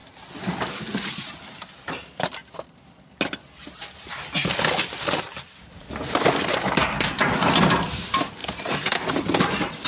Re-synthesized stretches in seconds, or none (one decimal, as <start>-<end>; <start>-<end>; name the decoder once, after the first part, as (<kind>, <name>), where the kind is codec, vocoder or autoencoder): 3.8-4.6 (vocoder, BigVGAN v2); 8.4-9.9